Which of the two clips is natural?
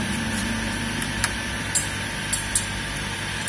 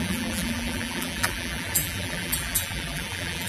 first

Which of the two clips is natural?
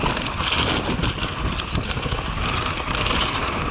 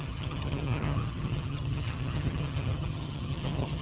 first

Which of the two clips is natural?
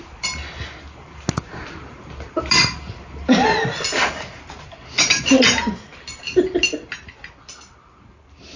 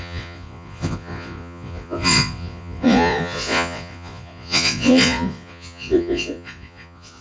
first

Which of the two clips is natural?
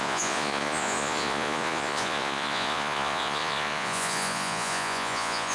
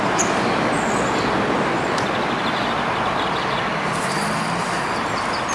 second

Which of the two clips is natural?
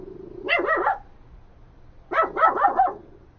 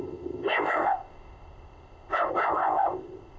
first